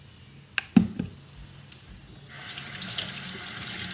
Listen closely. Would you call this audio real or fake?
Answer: real